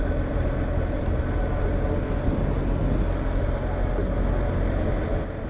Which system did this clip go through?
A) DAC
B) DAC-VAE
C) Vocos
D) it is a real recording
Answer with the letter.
D